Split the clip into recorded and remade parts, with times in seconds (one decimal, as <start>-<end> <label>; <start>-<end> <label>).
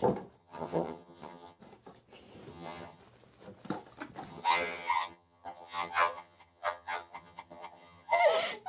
0.0-0.4 recorded; 0.4-1.6 remade; 1.6-2.5 recorded; 2.5-3.0 remade; 3.0-4.3 recorded; 4.3-8.2 remade; 8.2-8.7 recorded